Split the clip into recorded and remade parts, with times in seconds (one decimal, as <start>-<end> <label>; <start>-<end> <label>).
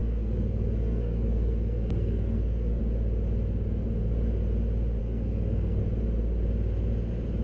0.0-2.8 remade; 2.8-5.0 recorded; 5.0-5.8 remade; 5.8-7.4 recorded